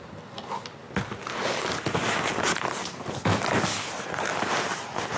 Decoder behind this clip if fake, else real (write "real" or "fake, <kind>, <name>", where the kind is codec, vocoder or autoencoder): real